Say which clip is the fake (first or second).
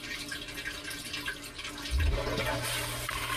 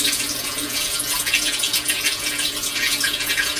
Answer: second